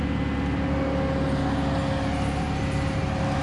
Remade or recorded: recorded